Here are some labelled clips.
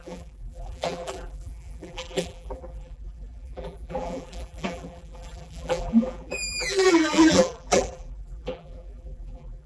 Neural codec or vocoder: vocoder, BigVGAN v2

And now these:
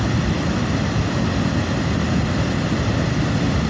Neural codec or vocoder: none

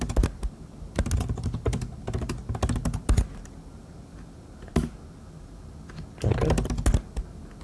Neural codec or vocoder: none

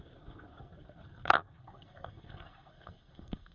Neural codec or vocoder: codec, SNAC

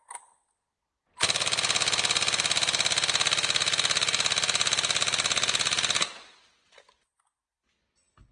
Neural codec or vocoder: none